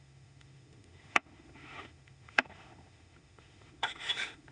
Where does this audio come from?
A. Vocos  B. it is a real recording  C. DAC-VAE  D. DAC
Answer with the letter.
C